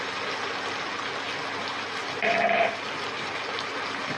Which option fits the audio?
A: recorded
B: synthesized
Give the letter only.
A